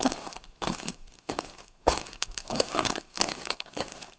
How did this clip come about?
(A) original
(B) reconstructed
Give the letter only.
B